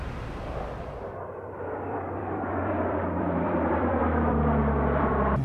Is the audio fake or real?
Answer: fake